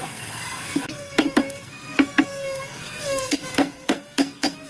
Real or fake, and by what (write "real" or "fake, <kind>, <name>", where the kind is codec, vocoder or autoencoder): fake, codec, SNAC